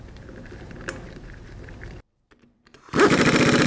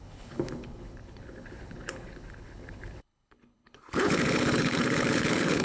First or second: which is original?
first